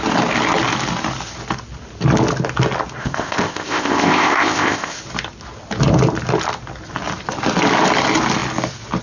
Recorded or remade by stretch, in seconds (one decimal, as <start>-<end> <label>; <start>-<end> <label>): 0.0-3.0 recorded; 3.0-5.0 remade; 5.0-9.0 recorded